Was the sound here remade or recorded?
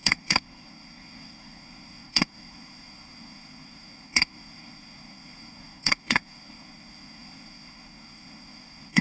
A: remade